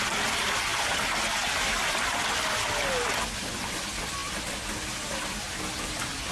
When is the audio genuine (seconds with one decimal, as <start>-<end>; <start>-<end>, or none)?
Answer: 0.0-6.3